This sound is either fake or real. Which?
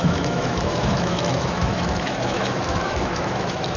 fake